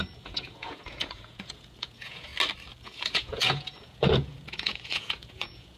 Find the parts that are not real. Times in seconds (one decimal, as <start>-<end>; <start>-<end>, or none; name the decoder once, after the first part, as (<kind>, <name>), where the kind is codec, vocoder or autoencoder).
0.0-2.3 (vocoder, Vocos); 2.8-5.8